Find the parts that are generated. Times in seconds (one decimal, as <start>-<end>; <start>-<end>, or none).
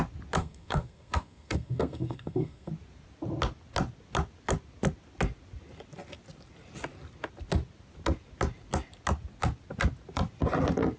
0.4-2.7